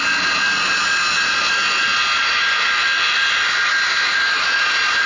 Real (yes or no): yes